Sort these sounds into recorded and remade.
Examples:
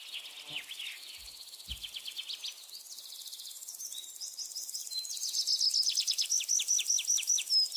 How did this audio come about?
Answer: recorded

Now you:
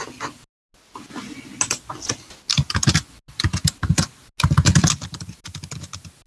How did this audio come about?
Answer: recorded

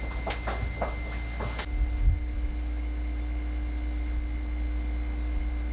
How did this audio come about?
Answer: recorded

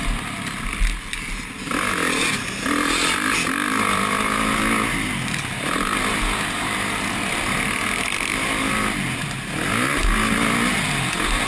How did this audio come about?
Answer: recorded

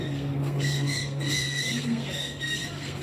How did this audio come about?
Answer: remade